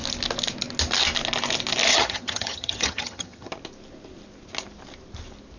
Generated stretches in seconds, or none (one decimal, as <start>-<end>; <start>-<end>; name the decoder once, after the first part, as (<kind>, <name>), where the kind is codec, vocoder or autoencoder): 1.9-3.5 (vocoder, HiFi-GAN)